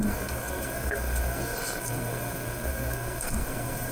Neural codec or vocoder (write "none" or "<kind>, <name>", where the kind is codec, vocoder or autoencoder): codec, SNAC